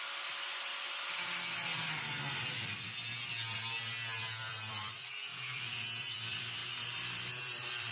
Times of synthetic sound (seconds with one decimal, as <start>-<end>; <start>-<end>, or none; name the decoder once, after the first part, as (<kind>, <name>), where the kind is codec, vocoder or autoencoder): 0.0-0.7 (vocoder, BigVGAN v2); 4.4-5.3; 6.0-7.9